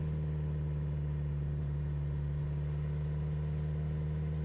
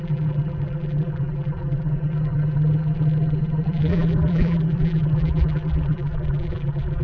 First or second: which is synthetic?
second